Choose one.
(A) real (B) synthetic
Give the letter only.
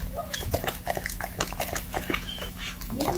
B